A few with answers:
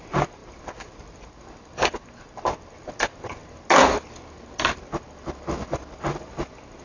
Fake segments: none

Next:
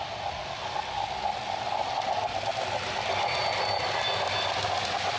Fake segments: none

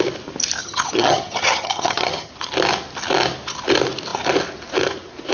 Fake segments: 0.6-2.3 (vocoder, HiFi-GAN)

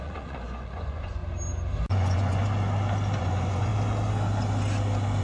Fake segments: 0.0-1.2 (vocoder, Vocos); 1.9-2.4; 3.2-3.7

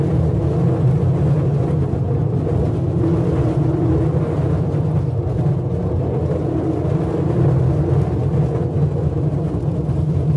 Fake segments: none

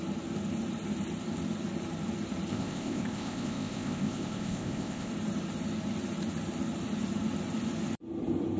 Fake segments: 2.5-5.1 (codec, ZipCodec)